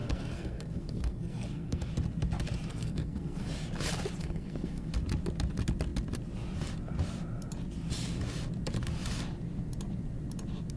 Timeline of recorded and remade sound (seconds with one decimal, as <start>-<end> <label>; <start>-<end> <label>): 0.0-1.9 remade; 1.9-2.7 recorded; 2.7-3.5 remade; 3.5-4.2 recorded; 4.2-4.9 remade; 4.9-10.8 recorded